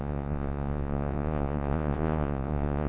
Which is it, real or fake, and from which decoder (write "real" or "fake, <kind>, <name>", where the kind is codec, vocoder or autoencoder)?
fake, vocoder, Vocos